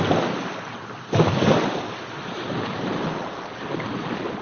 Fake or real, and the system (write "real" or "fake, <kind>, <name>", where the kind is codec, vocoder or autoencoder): real